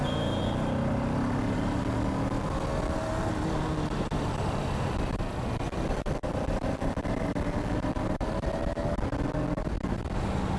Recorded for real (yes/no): yes